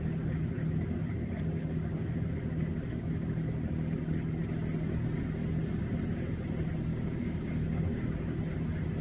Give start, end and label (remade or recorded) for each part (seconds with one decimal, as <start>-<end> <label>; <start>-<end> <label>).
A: 0.0-6.9 recorded; 6.9-8.4 remade; 8.4-9.0 recorded